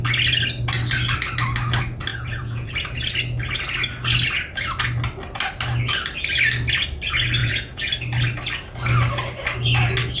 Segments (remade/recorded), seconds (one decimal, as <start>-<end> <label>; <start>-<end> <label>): 0.0-2.1 recorded; 2.1-2.7 remade; 2.7-7.4 recorded; 7.4-7.9 remade; 7.9-10.2 recorded